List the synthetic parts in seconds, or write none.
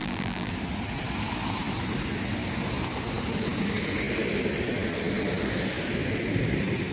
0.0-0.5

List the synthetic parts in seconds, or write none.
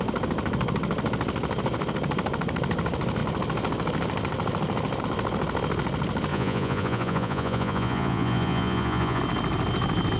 6.3-9.2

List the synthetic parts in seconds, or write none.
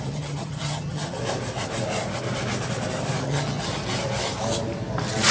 0.0-1.2; 3.2-3.7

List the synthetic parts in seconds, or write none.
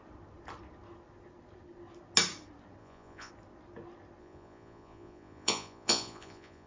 2.8-3.3; 4.2-6.7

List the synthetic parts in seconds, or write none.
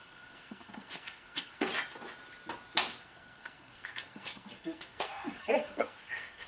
0.0-1.7; 3.0-6.5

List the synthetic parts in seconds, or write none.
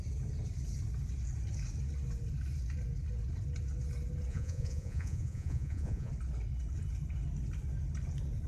4.3-6.1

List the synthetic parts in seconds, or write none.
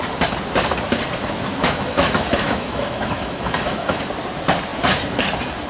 1.6-4.0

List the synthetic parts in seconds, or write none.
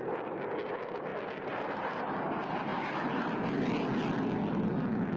none